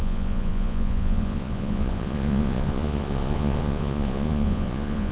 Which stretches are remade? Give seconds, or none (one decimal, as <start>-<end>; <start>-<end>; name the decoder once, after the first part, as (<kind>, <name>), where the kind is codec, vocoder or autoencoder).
0.0-5.1 (vocoder, Vocos)